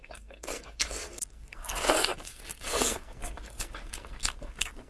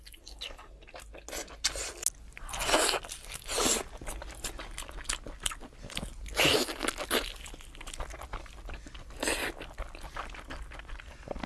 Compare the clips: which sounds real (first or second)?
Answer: second